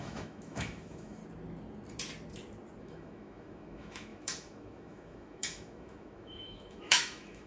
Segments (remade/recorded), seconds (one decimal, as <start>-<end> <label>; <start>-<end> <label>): 0.0-1.2 remade; 1.2-2.8 recorded; 2.8-7.5 remade